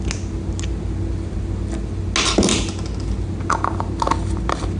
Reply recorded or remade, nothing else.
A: recorded